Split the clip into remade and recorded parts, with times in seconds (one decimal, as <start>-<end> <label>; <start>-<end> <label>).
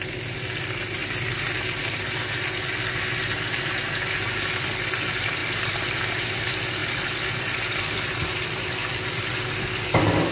0.0-6.8 recorded; 6.8-9.8 remade; 9.8-10.3 recorded